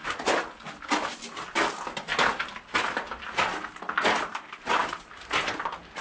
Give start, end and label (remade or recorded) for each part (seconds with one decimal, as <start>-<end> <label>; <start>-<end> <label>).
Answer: 0.0-6.0 recorded